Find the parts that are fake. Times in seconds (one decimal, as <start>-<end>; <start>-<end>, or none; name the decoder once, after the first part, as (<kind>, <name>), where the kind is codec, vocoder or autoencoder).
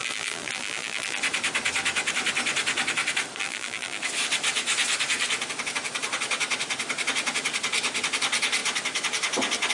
0.0-1.2 (vocoder, BigVGAN v2); 3.4-4.0